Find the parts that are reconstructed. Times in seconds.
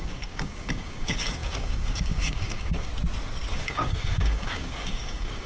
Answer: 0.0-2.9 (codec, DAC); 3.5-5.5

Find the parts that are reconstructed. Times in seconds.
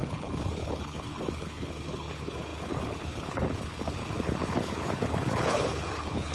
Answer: 0.0-6.3 (codec, HILCodec)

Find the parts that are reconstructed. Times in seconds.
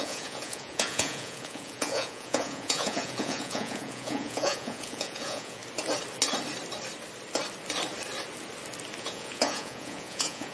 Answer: 0.0-5.6 (vocoder, Vocos); 9.0-10.5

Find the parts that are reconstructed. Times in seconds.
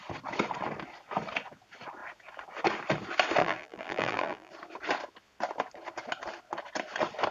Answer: 3.4-4.5 (vocoder, BigVGAN v2)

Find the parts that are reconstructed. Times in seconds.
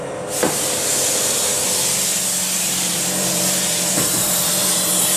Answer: 0.0-0.9 (vocoder, BigVGAN v2); 2.6-5.2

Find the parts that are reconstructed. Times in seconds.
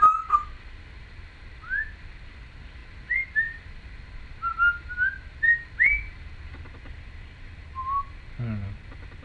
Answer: none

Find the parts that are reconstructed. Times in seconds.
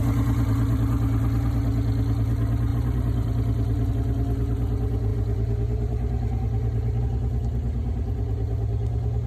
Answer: 2.7-3.9 (vocoder, BigVGAN v2); 5.1-7.0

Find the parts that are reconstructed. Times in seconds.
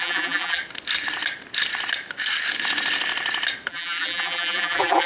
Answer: 0.0-0.6 (vocoder, BigVGAN v2); 3.7-5.1